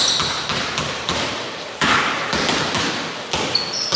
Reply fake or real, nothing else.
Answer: real